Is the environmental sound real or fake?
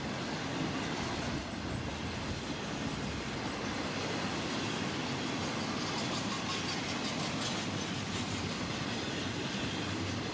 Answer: real